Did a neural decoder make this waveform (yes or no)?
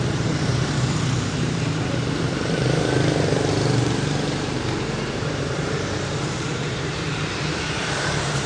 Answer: yes